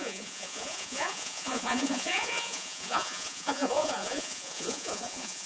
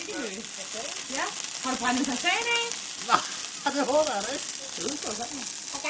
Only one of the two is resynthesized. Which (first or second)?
first